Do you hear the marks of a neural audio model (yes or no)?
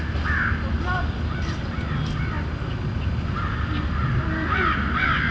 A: no